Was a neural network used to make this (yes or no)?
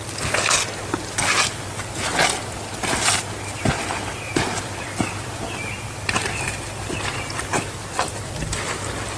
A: no